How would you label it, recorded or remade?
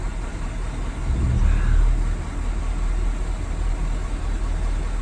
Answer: recorded